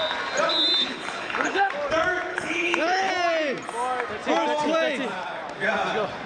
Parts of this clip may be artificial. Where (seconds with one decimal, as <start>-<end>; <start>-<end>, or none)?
0.8-1.7; 2.3-3.1